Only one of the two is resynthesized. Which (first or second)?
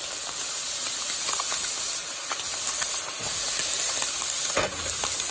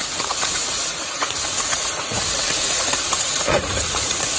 second